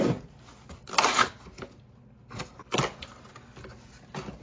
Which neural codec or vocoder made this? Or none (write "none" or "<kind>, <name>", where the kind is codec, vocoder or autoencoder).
none